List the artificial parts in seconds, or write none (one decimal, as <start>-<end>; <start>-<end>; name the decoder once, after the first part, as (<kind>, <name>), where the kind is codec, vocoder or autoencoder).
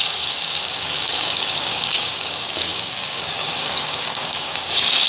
0.0-5.1 (codec, DAC)